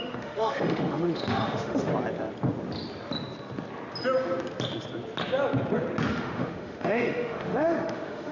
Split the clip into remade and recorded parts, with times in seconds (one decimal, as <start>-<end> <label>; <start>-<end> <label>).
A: 0.0-1.9 remade; 1.9-6.1 recorded; 6.1-8.3 remade